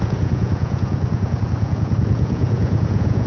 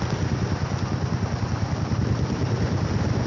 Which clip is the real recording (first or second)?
second